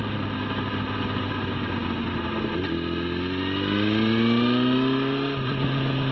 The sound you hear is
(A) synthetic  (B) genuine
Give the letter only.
B